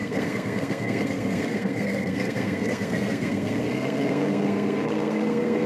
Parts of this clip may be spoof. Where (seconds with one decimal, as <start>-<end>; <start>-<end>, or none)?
0.0-5.7